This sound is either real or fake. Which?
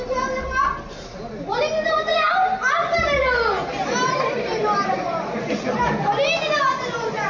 real